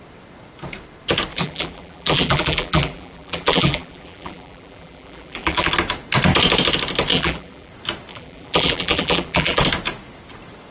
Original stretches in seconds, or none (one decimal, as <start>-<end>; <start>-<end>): 0.0-1.3; 5.7-7.1; 7.7-8.1; 9.6-10.7